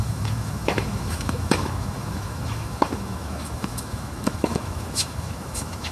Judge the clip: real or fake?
fake